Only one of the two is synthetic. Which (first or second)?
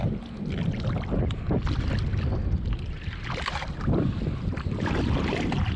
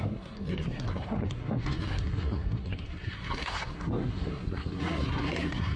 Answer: second